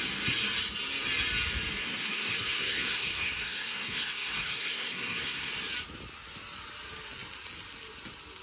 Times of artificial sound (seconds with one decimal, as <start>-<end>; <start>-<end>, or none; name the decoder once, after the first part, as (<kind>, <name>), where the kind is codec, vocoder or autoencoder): 1.8-5.5 (codec, SNAC)